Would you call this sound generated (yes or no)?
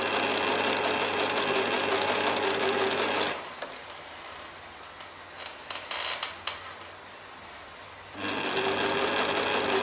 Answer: no